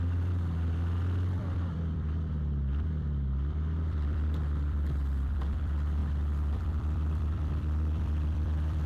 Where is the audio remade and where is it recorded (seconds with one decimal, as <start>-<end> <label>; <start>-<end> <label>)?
0.0-8.9 remade